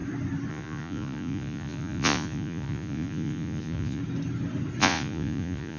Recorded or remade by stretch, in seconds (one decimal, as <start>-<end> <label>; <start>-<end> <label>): 0.0-0.5 recorded; 0.5-4.0 remade; 4.0-4.8 recorded; 4.8-5.8 remade